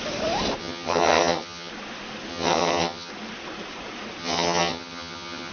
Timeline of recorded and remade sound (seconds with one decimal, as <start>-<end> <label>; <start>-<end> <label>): 0.0-0.6 recorded; 0.6-1.7 remade; 1.7-2.3 recorded; 2.3-3.1 remade; 3.1-4.2 recorded; 4.2-5.5 remade